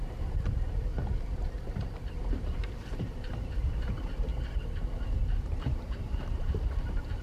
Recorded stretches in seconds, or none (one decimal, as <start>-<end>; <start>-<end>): 0.9-2.1; 4.3-5.1